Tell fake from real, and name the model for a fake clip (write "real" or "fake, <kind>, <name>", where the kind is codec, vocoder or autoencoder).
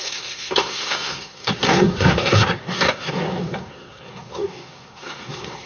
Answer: fake, codec, SNAC